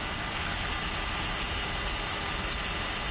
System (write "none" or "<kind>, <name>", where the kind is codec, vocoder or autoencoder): none